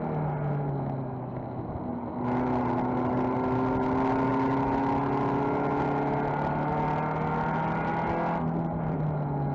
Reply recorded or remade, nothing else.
recorded